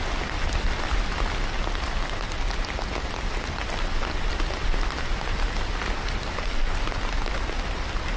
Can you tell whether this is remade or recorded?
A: recorded